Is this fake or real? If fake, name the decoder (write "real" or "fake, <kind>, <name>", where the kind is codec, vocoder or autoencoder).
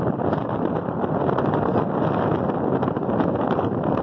real